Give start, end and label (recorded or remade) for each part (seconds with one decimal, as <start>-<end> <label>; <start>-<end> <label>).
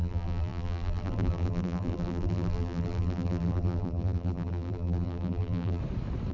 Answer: 0.0-5.8 remade; 5.8-6.3 recorded